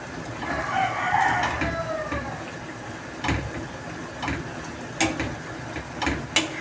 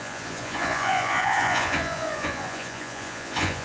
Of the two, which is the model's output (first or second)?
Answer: second